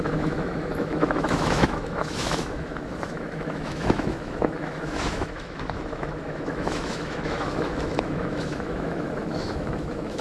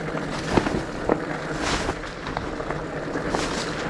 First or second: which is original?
second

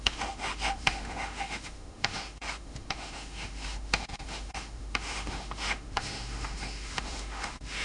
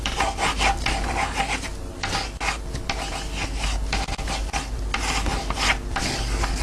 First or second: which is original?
second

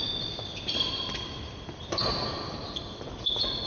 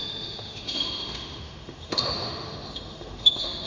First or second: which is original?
first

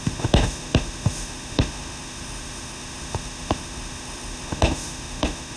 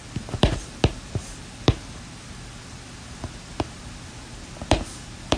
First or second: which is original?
second